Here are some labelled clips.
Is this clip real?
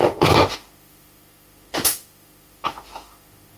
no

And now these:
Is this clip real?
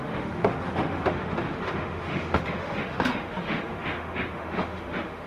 no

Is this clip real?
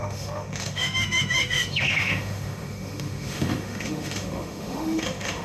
no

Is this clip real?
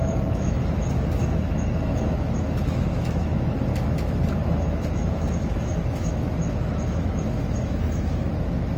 no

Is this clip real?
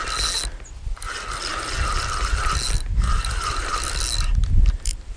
yes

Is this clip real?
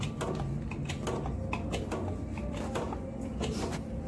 yes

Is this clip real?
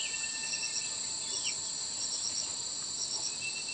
yes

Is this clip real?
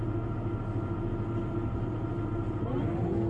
yes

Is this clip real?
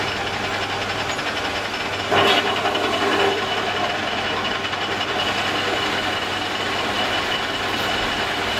yes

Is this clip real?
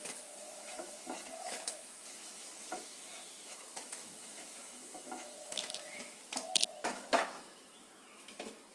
no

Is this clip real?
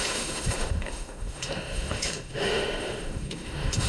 no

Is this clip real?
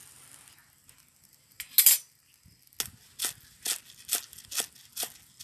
yes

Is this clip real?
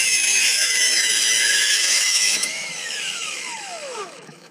no